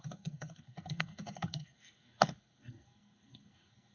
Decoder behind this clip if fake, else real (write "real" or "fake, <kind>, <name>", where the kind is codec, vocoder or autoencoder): fake, codec, SNAC